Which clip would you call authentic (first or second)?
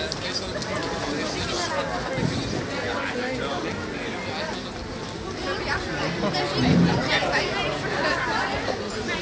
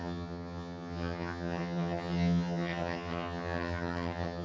first